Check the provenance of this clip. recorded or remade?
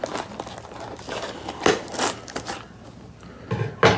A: recorded